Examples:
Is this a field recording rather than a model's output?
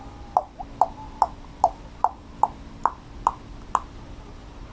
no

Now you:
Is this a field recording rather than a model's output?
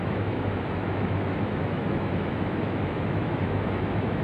no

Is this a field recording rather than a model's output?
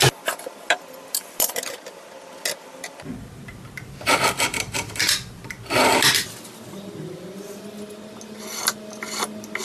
yes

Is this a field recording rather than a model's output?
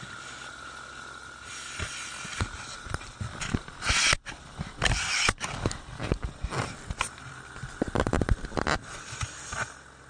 yes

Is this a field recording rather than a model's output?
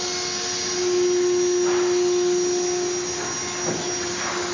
yes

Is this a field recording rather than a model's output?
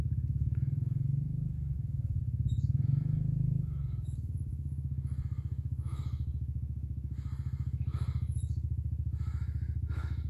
no